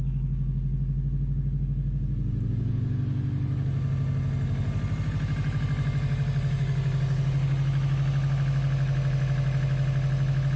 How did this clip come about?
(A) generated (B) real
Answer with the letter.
B